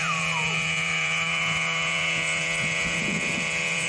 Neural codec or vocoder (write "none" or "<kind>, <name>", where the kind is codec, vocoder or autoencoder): vocoder, Vocos